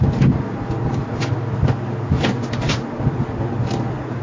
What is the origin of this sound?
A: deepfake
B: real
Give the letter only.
B